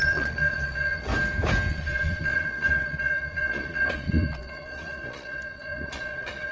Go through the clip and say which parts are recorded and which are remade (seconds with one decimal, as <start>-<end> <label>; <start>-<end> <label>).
0.0-1.1 remade; 1.1-1.7 recorded; 1.7-6.5 remade